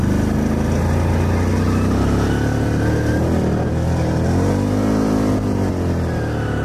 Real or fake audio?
real